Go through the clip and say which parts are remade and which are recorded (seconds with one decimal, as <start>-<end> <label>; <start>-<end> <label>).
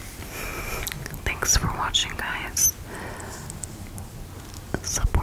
0.0-5.2 recorded